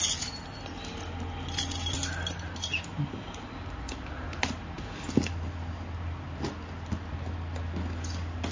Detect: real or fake real